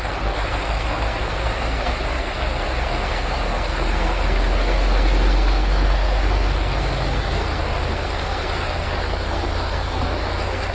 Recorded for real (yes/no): no